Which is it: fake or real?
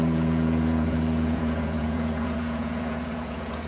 fake